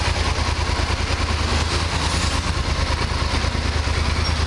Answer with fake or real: real